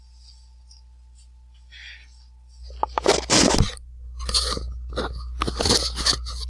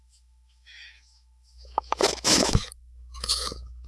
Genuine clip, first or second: first